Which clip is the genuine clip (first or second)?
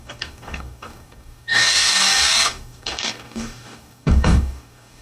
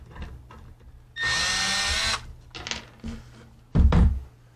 second